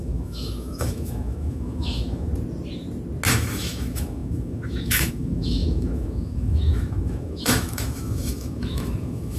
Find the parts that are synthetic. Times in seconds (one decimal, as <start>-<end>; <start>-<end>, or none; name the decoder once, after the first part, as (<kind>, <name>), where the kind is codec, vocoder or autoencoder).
0.0-2.3 (autoencoder, DAC-VAE); 3.3-9.4